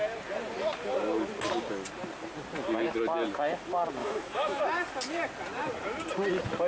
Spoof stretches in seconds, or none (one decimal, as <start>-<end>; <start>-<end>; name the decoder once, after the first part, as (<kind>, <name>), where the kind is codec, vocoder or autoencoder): 4.0-4.6 (autoencoder, DAC-VAE)

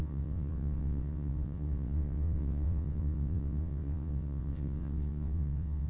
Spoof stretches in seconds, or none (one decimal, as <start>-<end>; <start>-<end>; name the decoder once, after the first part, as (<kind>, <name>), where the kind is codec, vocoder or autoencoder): 0.0-5.9 (vocoder, WaveNeXt)

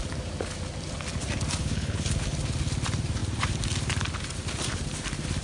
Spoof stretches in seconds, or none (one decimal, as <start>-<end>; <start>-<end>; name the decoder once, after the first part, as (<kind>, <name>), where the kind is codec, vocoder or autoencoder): 1.6-2.1 (codec, HILCodec)

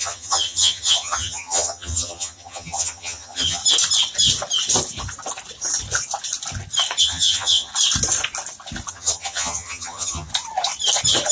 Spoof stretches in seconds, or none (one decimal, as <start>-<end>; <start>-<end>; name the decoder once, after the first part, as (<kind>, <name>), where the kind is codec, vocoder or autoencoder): 0.0-3.6 (vocoder, HiFi-GAN); 7.0-7.7; 8.9-10.3

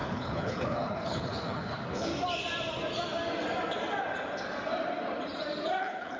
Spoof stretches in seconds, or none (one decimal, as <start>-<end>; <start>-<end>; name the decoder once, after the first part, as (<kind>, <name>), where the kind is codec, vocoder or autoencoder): 0.0-2.1 (codec, HILCodec); 5.8-6.2

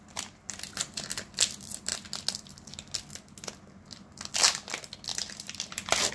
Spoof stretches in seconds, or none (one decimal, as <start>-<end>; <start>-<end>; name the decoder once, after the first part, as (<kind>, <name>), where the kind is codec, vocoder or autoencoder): 5.1-6.1 (vocoder, BigVGAN v2)

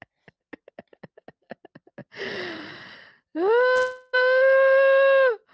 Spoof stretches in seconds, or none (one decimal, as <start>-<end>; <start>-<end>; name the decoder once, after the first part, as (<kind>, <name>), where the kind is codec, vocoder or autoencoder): none

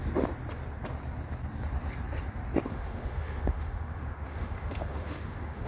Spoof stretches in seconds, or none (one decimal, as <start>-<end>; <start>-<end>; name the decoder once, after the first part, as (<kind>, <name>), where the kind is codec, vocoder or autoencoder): 2.7-5.7 (autoencoder, DAC-VAE)